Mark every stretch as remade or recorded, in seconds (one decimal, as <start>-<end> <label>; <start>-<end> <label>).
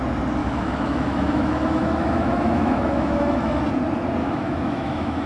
0.0-0.4 recorded; 0.4-3.6 remade; 3.6-4.2 recorded; 4.2-5.3 remade